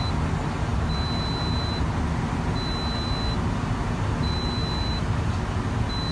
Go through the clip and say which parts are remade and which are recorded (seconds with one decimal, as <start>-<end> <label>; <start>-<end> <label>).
0.0-6.1 recorded